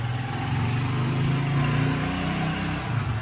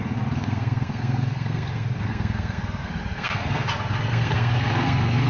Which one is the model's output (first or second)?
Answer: second